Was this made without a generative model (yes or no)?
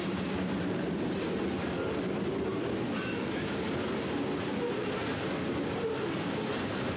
yes